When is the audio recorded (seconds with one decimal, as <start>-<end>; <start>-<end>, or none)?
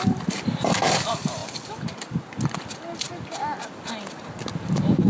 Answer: 1.4-4.5